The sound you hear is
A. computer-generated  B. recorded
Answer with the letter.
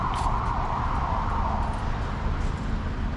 B